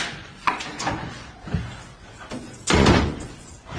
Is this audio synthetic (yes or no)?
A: yes